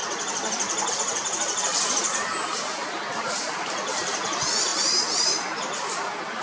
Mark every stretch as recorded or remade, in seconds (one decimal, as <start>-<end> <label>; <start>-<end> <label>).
0.0-6.4 remade